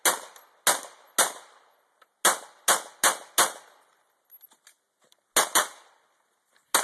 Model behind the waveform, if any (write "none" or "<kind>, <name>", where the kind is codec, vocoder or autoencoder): none